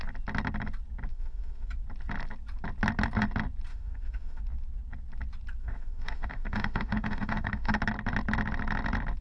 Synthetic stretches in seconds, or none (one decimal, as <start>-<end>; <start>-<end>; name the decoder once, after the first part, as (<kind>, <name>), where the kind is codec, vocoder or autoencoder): 1.1-1.7 (autoencoder, DAC-VAE); 3.7-4.4; 5.6-7.8